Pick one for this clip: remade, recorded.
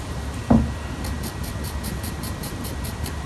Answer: recorded